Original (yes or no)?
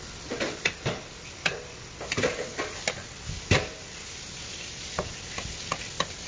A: yes